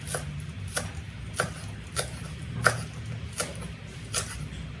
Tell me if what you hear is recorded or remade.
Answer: recorded